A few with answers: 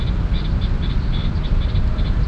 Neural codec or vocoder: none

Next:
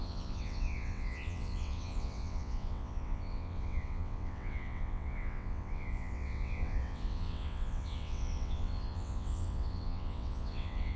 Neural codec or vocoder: vocoder, WaveNeXt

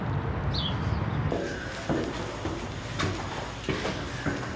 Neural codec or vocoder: none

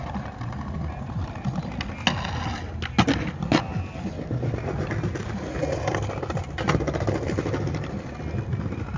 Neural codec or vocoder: none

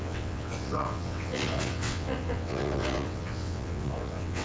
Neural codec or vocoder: vocoder, WaveNeXt